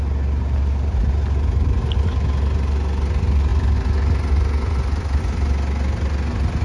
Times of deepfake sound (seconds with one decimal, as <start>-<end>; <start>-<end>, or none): none